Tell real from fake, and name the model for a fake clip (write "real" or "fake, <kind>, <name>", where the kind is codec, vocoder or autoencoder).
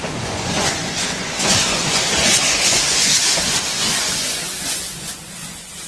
fake, vocoder, Vocos